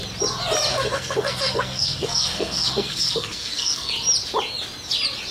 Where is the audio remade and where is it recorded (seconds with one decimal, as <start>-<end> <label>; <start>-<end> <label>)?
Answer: 0.0-0.7 recorded; 0.7-3.9 remade; 3.9-5.3 recorded